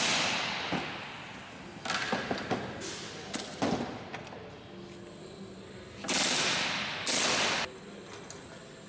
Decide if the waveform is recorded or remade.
recorded